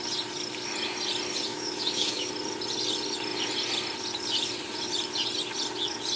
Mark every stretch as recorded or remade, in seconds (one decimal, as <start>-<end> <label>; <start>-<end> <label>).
0.0-1.5 recorded; 1.5-2.3 remade; 2.3-6.2 recorded